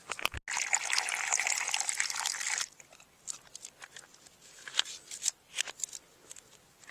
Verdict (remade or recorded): recorded